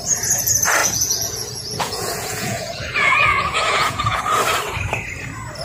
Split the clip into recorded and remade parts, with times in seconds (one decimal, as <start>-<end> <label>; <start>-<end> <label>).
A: 0.0-0.8 recorded; 0.8-4.2 remade; 4.2-5.6 recorded